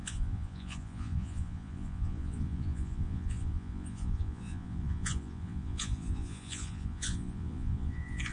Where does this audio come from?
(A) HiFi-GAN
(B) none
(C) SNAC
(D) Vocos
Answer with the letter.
D